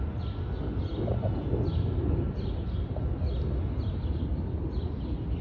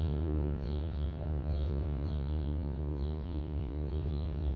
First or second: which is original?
first